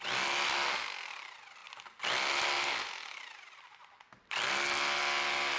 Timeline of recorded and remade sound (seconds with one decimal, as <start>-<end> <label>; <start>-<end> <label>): 0.0-5.6 recorded